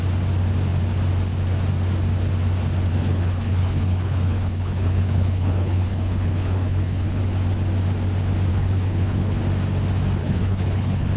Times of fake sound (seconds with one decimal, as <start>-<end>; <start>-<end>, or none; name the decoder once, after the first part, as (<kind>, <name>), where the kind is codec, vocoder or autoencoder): 2.9-7.2 (codec, HILCodec); 8.5-9.4; 10.2-11.2